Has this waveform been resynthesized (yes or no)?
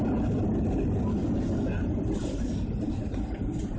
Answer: no